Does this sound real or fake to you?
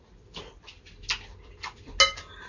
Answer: real